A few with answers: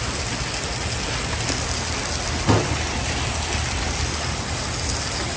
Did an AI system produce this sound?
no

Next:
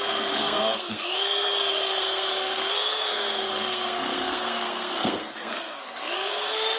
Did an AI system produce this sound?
yes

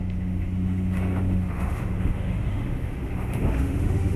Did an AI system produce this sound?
yes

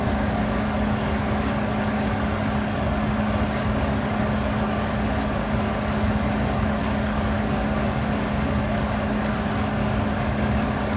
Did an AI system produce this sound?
yes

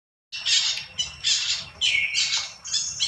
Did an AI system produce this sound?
no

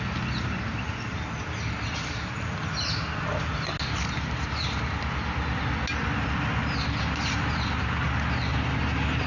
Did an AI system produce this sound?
no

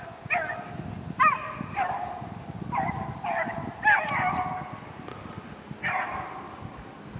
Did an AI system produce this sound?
no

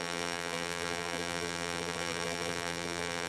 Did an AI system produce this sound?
yes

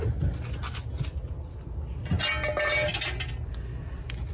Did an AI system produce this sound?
no